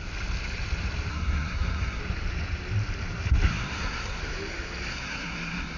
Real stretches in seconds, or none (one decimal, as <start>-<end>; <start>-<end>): 0.0-1.1; 2.0-3.5; 4.2-4.9